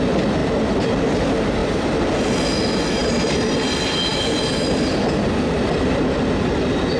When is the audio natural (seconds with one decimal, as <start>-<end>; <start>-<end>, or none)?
0.0-7.0